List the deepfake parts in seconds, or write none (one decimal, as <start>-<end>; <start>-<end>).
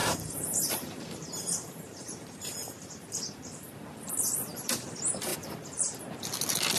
0.0-4.1; 5.3-6.2